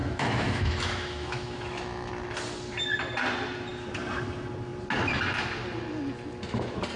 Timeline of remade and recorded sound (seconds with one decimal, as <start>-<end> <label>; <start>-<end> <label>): 0.0-2.1 remade; 2.1-7.0 recorded